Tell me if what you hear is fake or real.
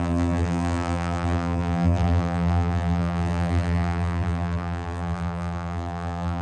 fake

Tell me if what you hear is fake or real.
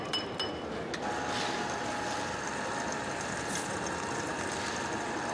real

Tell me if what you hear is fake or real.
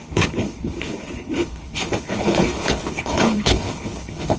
fake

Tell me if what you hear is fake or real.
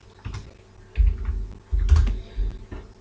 real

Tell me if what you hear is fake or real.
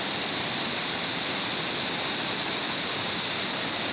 real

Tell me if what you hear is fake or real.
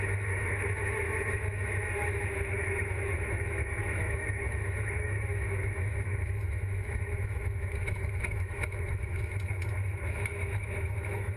fake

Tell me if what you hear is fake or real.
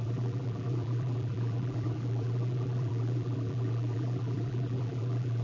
fake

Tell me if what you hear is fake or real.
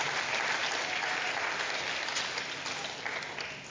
real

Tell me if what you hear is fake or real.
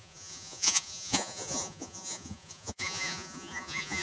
fake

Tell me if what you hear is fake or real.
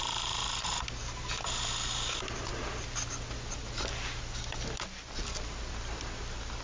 real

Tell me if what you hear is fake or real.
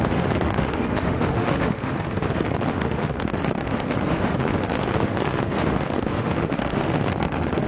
fake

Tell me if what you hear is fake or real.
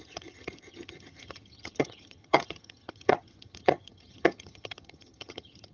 fake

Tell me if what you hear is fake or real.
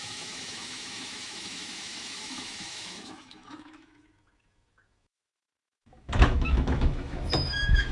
fake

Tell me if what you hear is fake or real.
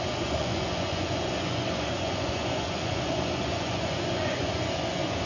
fake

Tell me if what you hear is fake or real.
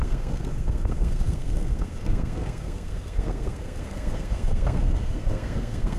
fake